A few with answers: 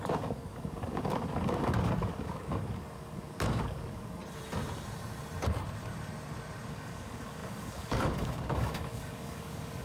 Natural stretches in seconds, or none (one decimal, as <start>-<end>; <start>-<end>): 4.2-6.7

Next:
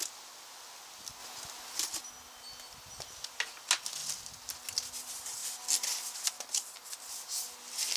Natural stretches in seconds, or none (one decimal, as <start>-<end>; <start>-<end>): 0.0-8.0

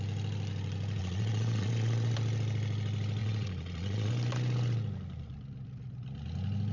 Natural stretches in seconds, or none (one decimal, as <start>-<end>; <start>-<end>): 0.0-1.0; 2.1-3.2; 4.1-6.7

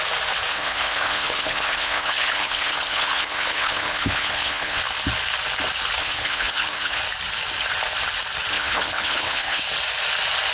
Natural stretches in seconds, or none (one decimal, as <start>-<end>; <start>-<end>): 0.0-0.5; 4.8-6.0; 7.0-8.5; 9.6-10.5

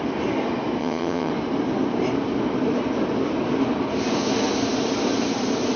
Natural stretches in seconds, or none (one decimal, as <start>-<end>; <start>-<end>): 0.0-0.8; 1.3-5.8

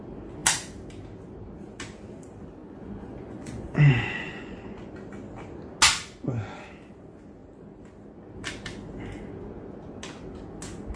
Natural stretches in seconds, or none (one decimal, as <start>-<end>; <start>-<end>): 0.0-2.6; 4.9-11.0

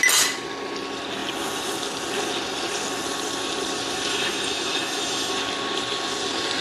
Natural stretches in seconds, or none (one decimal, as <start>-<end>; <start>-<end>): 0.0-4.1; 5.3-6.6

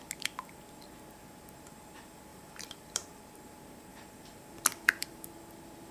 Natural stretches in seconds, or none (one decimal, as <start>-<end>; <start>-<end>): 0.0-2.3; 3.2-3.9; 5.3-5.9